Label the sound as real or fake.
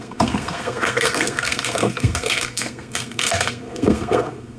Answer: fake